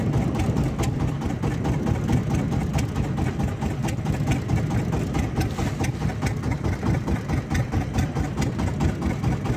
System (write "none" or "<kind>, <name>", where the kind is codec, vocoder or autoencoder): none